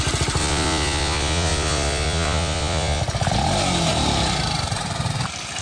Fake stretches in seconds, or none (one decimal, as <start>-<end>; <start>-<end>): 0.4-3.0